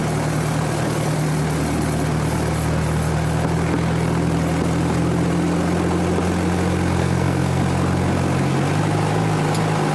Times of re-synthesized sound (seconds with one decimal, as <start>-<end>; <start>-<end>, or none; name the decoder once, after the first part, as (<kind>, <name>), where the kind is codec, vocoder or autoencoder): 7.0-7.6 (codec, SNAC)